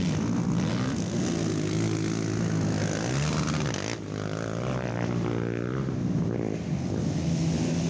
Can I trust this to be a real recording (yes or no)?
yes